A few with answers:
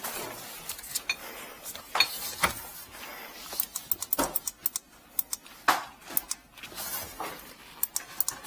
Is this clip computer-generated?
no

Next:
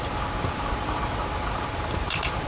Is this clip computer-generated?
yes